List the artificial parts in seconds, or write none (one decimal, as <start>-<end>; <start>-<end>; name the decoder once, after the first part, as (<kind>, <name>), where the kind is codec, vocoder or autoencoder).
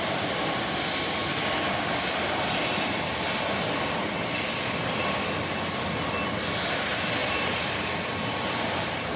7.2-9.2 (vocoder, BigVGAN v2)